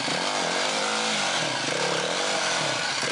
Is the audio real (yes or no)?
yes